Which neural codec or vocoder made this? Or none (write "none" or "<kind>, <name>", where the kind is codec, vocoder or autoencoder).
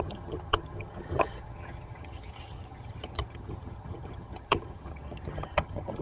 vocoder, HiFi-GAN